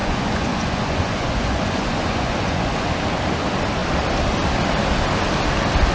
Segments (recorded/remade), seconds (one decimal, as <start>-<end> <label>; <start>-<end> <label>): 0.0-2.9 remade; 2.9-5.9 recorded